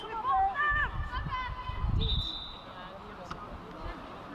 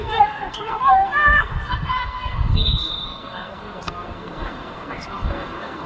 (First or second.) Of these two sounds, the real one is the first